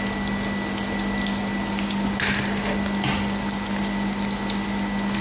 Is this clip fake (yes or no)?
no